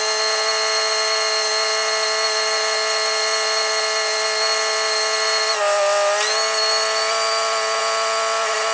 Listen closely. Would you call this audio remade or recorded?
recorded